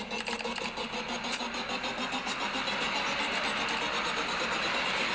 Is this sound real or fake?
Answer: real